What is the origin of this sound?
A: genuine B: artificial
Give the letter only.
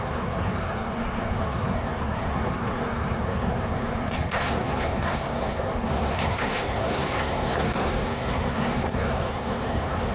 B